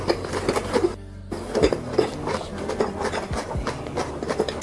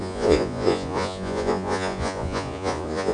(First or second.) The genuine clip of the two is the first